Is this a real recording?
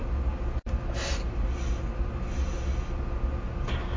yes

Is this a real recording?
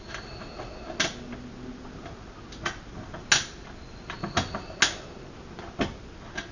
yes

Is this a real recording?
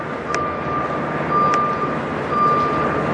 yes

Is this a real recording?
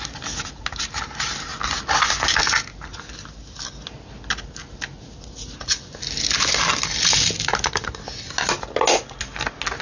yes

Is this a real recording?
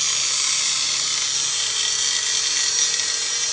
yes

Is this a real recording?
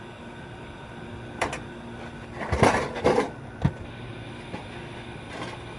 yes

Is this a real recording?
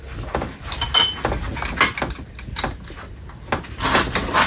yes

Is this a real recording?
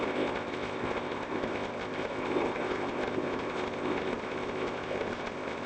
no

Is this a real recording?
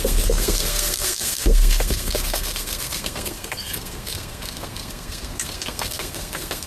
no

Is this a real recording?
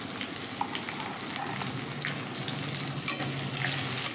yes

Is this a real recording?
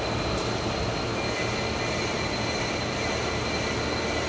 yes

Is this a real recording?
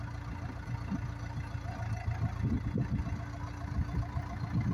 yes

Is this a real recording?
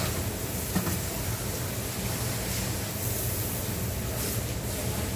yes